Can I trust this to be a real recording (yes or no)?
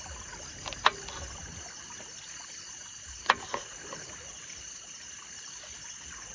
yes